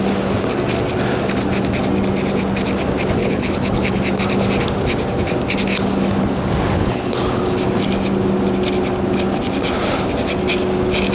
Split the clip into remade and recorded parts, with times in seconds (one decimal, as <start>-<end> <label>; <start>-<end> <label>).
0.0-3.2 recorded; 3.2-4.0 remade; 4.0-6.8 recorded; 6.8-7.4 remade; 7.4-11.1 recorded